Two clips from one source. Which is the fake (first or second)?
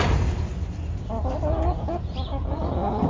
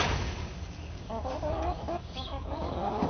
second